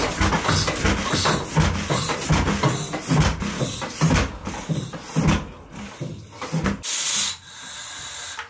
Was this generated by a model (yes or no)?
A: no